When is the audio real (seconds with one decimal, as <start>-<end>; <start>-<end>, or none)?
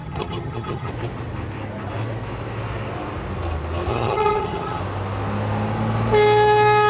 0.9-3.9; 4.8-6.9